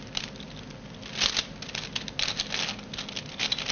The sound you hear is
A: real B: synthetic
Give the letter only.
A